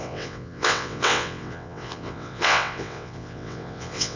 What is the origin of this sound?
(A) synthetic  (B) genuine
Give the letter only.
A